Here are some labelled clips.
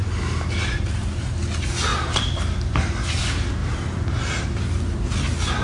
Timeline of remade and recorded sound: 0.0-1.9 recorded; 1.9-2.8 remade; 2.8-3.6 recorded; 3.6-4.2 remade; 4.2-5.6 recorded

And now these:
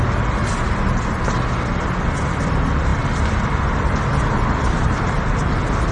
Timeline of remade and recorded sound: 0.0-5.9 recorded